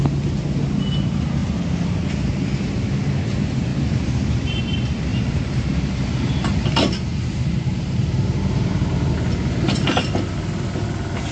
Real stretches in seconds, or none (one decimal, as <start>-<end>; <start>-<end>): 0.0-3.7; 4.6-5.1; 9.1-11.3